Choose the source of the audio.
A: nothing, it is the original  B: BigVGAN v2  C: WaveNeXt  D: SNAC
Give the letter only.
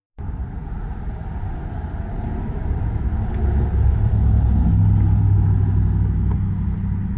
A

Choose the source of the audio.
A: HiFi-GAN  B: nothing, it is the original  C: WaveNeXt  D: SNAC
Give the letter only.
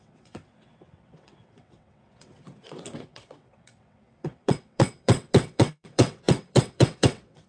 C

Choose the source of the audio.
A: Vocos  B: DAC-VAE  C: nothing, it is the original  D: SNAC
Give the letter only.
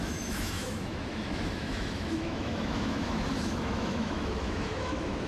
B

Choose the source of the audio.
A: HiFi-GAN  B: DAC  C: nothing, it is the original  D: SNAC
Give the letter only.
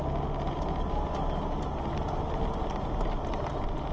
C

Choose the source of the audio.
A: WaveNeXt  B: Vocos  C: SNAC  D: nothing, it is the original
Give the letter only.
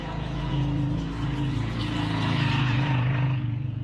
B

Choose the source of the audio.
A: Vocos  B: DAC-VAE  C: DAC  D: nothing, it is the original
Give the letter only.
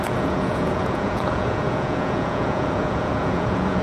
A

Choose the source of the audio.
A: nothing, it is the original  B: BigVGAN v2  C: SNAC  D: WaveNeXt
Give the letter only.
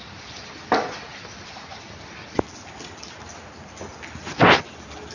A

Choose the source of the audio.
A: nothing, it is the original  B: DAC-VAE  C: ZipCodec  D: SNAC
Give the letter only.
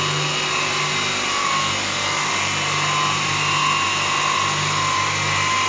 A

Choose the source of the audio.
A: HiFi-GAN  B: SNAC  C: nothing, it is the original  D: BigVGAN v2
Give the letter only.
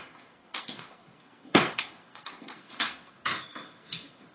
B